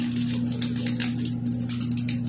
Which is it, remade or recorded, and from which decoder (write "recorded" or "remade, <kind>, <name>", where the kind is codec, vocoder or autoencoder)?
recorded